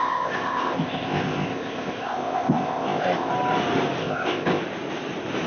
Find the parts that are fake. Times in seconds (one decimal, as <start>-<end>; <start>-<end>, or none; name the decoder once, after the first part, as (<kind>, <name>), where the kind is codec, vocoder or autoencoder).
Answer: 0.0-3.3 (codec, ZipCodec); 4.0-4.6